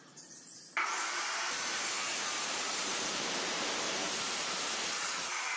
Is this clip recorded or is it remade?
remade